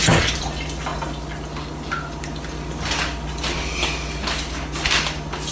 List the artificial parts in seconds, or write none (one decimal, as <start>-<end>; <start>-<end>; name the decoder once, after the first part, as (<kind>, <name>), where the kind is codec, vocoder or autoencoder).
none